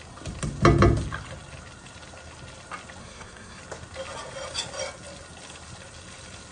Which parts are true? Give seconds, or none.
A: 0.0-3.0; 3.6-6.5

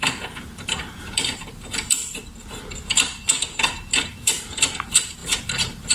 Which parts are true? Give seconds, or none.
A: 2.2-4.1

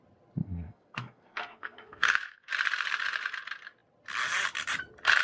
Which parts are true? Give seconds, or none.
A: 0.0-0.4; 2.5-5.2